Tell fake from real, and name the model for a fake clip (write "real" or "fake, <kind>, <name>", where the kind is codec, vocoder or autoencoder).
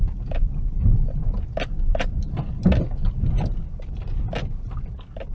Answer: real